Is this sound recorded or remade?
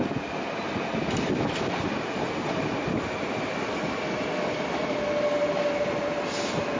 recorded